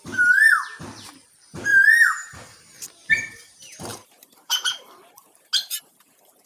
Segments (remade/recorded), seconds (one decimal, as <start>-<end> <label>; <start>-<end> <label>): 0.0-1.7 recorded; 1.7-3.5 remade; 3.5-3.9 recorded; 3.9-5.5 remade; 5.5-6.5 recorded